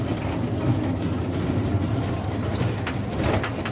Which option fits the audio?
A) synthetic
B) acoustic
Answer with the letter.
B